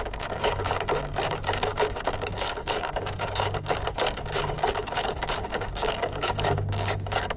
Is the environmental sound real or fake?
fake